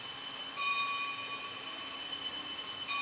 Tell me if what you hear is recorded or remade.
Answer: recorded